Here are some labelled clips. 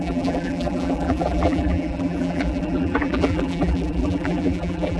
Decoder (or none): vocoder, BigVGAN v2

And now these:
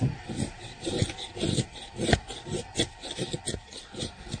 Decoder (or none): none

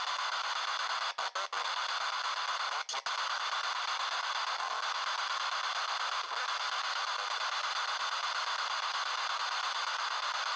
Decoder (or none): none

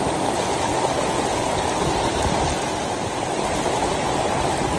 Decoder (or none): none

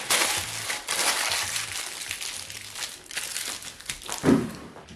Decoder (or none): none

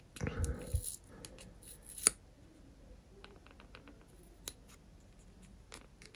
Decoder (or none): none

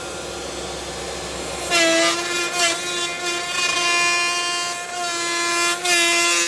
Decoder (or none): none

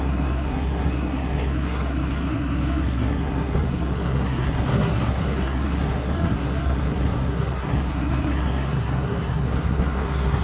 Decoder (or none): codec, SNAC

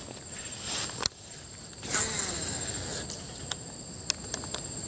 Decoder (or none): none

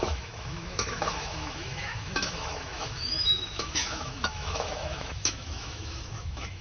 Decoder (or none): autoencoder, DAC-VAE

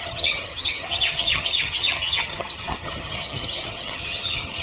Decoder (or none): vocoder, HiFi-GAN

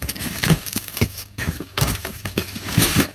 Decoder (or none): codec, DAC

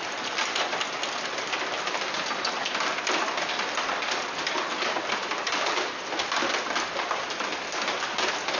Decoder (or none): none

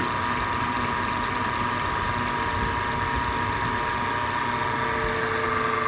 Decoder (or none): none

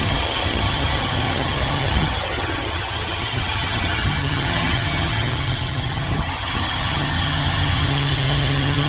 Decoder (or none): vocoder, HiFi-GAN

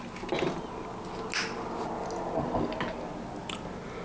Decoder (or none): none